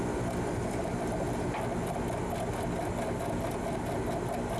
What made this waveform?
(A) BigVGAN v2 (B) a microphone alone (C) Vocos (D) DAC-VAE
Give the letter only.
B